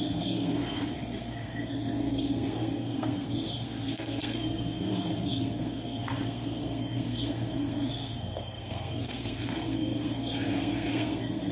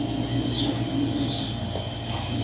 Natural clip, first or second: second